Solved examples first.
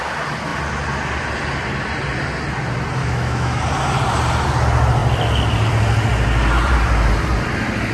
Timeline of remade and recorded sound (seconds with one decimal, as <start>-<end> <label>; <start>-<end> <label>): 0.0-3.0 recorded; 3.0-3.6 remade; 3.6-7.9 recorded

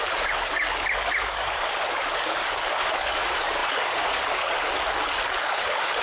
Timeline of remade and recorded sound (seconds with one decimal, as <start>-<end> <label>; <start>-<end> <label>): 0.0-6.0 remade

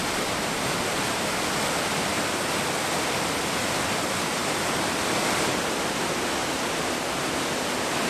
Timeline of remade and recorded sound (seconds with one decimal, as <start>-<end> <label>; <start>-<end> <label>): 0.0-8.1 recorded

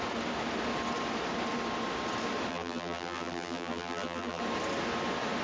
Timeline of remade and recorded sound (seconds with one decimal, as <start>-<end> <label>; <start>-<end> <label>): 0.0-2.5 recorded; 2.5-4.4 remade; 4.4-5.4 recorded